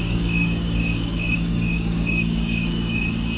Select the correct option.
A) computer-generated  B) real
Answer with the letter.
A